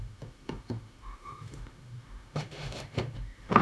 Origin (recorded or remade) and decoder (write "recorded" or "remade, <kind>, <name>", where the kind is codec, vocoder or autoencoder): remade, autoencoder, DAC-VAE